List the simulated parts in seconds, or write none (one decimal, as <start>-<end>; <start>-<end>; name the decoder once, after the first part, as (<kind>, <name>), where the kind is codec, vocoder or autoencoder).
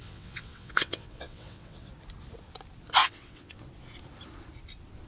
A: 0.0-1.9 (vocoder, WaveNeXt); 3.0-3.6